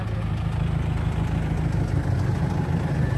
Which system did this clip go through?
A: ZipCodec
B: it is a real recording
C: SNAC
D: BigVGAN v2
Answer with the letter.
B